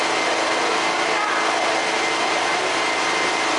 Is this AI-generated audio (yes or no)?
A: no